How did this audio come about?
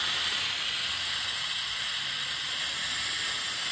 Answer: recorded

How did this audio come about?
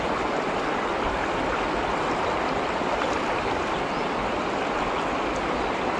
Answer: recorded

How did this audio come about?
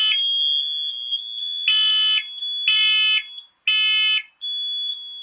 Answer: recorded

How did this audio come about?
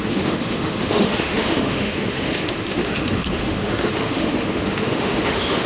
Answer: remade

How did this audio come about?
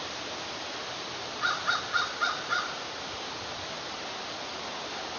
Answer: remade